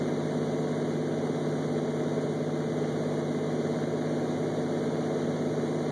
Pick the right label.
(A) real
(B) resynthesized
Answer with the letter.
A